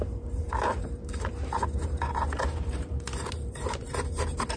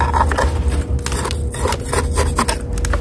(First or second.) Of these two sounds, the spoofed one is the first